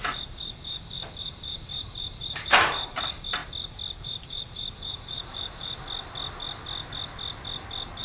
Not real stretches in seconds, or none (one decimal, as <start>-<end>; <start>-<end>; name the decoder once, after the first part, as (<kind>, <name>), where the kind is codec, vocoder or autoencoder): 0.0-3.4 (vocoder, BigVGAN v2); 4.0-5.7